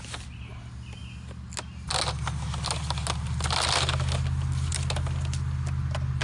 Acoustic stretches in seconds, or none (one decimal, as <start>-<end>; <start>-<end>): 0.0-6.2